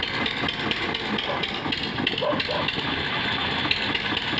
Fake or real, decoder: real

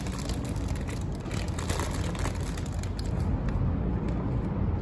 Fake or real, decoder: real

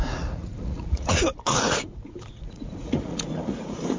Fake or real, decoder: fake, vocoder, Vocos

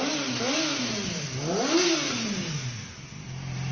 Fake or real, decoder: real